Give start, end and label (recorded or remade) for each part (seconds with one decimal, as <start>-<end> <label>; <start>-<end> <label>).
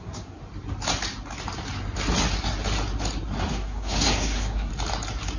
0.0-0.4 remade; 0.4-3.5 recorded; 3.5-4.7 remade; 4.7-5.4 recorded